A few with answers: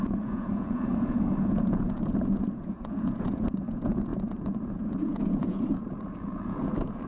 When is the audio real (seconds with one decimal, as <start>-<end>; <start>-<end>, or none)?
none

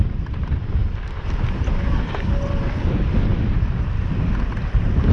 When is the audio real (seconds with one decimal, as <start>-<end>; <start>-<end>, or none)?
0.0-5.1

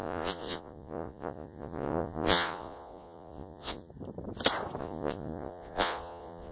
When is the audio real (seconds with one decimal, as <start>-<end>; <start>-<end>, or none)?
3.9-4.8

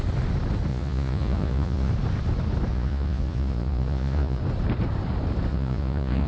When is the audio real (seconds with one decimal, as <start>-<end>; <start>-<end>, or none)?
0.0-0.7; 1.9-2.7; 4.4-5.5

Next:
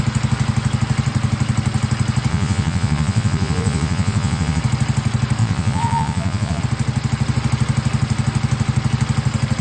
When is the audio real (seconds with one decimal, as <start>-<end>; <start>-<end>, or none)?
0.0-2.3; 4.6-5.4; 6.6-9.6

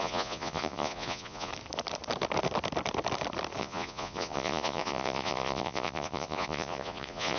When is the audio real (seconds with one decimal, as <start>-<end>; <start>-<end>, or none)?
1.5-3.6

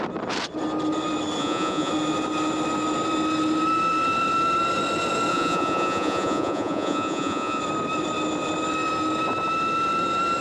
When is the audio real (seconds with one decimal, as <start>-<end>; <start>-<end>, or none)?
0.0-1.4; 1.9-5.3; 7.6-10.4